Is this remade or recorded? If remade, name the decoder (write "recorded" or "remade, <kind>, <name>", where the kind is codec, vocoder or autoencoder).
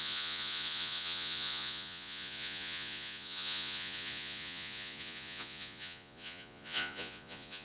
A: remade, vocoder, Vocos